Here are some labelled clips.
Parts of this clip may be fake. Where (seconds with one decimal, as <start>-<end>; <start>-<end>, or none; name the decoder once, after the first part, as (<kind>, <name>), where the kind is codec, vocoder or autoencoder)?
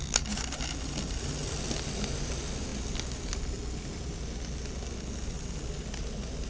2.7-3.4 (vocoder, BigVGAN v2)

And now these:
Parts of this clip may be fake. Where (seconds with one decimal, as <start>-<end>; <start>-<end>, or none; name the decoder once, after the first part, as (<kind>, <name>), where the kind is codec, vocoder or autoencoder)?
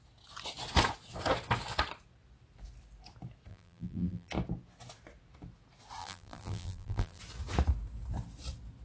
3.5-4.3 (vocoder, BigVGAN v2); 6.0-7.2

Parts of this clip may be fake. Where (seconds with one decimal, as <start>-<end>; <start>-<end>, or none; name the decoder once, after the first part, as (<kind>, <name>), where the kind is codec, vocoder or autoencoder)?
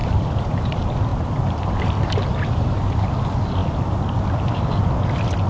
0.0-0.6 (vocoder, BigVGAN v2); 1.1-3.0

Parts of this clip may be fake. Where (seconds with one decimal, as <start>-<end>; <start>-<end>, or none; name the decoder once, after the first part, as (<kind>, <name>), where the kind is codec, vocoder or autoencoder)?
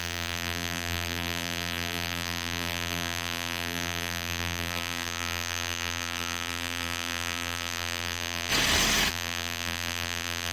0.0-8.5 (vocoder, BigVGAN v2); 9.1-10.5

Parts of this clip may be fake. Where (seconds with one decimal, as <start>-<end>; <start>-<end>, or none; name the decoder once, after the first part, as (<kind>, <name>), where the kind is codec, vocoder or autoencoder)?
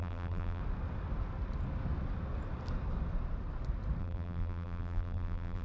0.0-0.6 (vocoder, BigVGAN v2); 4.0-5.6